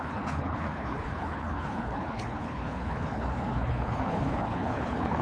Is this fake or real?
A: fake